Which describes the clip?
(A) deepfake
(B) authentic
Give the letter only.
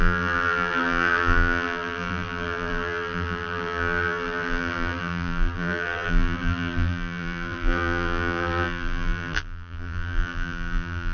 A